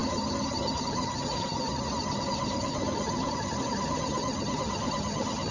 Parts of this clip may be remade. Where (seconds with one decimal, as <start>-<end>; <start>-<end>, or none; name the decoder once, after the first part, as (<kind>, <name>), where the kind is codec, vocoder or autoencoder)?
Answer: 0.0-1.6 (vocoder, HiFi-GAN); 2.0-5.5